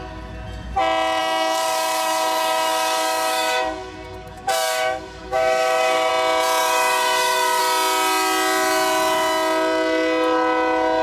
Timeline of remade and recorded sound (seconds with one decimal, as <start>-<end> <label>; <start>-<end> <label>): 0.0-1.2 recorded; 1.2-6.1 remade; 6.1-6.6 recorded; 6.6-7.6 remade; 7.6-11.0 recorded